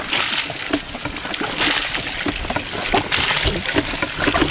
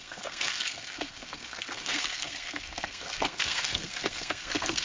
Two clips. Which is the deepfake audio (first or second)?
second